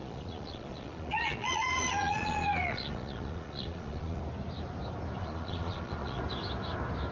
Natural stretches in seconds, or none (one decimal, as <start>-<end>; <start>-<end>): 4.2-5.2; 6.2-7.1